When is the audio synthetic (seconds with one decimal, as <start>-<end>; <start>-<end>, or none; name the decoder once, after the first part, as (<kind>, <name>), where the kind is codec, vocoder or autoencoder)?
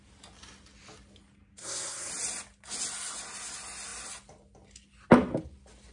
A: 1.6-2.1 (codec, SNAC)